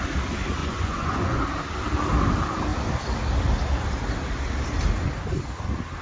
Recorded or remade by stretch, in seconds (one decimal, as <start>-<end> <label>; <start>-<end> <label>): 0.0-0.6 recorded; 0.6-1.4 remade; 1.4-6.0 recorded